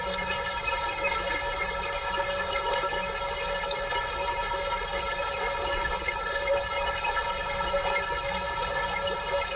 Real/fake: fake